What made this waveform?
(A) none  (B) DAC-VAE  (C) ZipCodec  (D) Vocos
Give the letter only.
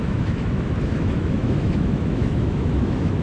B